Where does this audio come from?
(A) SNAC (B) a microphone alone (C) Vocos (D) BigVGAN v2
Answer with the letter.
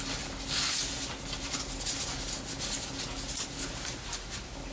B